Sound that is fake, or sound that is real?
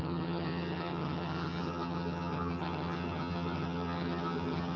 fake